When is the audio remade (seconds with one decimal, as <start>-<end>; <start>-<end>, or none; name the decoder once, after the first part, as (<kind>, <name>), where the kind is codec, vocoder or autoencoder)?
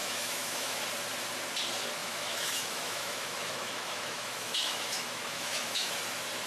0.0-0.8 (autoencoder, DAC-VAE); 2.0-5.9